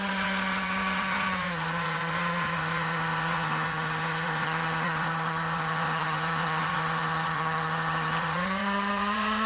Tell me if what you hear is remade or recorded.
remade